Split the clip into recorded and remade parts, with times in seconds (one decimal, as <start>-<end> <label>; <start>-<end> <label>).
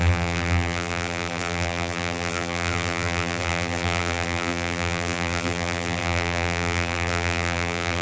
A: 0.0-8.0 remade